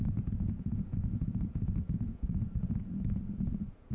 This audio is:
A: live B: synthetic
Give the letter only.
B